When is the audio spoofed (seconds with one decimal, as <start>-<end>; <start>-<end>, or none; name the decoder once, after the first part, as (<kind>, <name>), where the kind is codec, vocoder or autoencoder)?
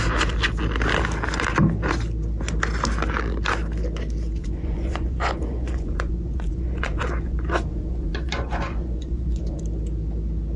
4.4-9.6 (vocoder, Vocos)